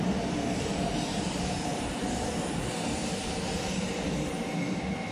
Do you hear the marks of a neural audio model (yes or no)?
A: yes